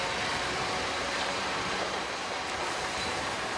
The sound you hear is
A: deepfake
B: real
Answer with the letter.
A